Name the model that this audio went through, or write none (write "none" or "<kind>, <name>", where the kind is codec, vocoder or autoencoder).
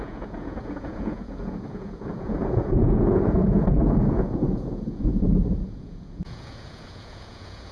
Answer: vocoder, Vocos